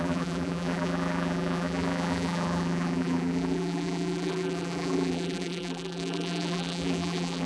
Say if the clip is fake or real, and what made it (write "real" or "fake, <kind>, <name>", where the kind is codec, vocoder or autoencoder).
fake, vocoder, BigVGAN v2